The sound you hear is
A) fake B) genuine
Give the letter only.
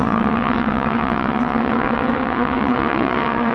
A